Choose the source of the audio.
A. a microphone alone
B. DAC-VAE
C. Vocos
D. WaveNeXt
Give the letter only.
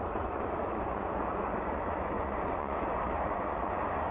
C